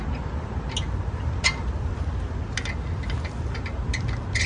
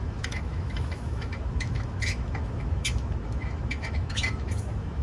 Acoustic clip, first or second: first